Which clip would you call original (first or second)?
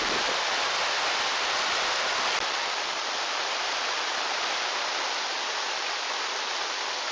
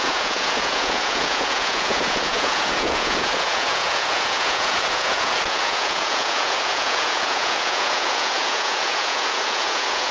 first